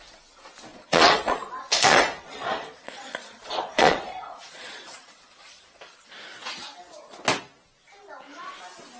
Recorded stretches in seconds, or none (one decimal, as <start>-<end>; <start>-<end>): 0.0-0.7; 5.8-9.0